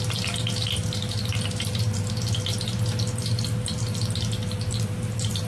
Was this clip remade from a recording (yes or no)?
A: no